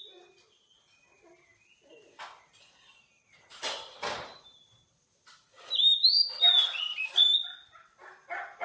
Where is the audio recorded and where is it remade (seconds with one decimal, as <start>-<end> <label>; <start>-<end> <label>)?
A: 0.0-8.6 recorded